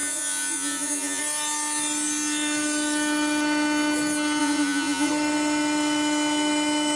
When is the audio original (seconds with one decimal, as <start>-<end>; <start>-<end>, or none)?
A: 1.2-4.4; 5.1-7.0